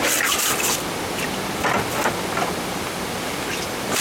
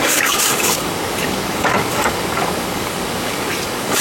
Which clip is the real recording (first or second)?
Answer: first